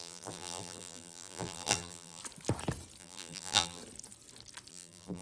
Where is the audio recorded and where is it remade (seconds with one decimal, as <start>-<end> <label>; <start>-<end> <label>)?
0.0-2.2 remade; 2.2-3.0 recorded; 3.0-3.8 remade; 3.8-4.7 recorded; 4.7-5.2 remade